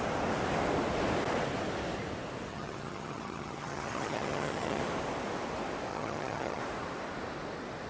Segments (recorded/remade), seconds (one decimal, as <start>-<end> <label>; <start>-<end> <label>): 0.0-2.5 recorded; 2.5-4.8 remade; 4.8-5.9 recorded; 5.9-6.6 remade; 6.6-7.9 recorded